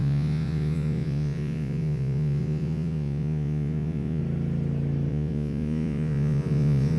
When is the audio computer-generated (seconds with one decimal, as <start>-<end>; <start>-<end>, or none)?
0.0-4.2; 5.1-7.0